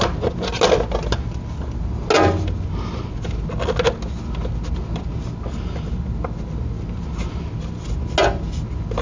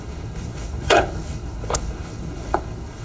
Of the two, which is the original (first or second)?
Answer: first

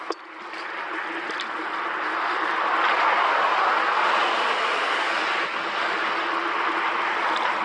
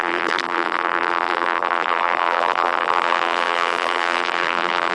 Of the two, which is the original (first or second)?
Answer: first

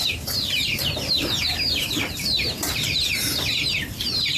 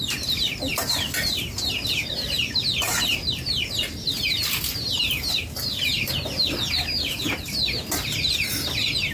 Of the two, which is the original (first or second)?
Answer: second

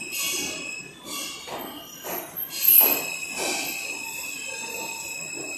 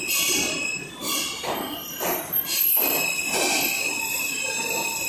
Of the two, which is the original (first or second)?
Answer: first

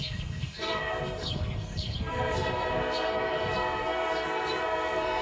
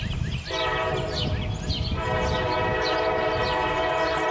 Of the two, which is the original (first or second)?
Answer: second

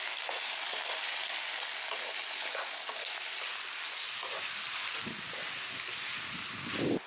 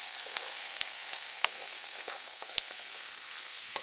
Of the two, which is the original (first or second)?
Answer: first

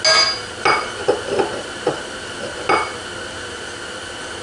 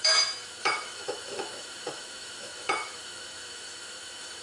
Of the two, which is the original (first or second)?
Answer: first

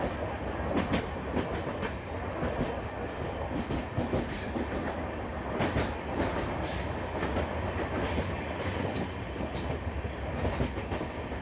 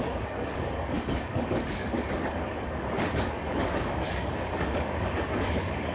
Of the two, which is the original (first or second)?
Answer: first